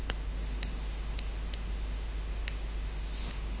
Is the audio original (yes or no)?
no